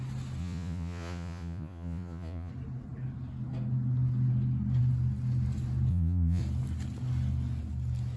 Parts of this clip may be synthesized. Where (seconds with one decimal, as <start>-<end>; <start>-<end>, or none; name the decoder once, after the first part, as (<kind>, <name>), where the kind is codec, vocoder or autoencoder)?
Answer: 0.4-2.5 (vocoder, Vocos); 5.9-6.4